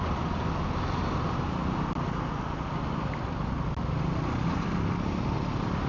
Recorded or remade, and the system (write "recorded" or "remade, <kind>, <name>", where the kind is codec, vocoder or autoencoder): recorded